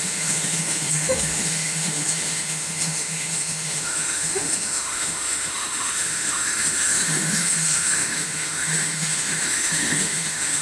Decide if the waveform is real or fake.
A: fake